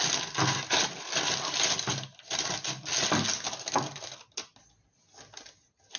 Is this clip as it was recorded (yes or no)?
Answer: yes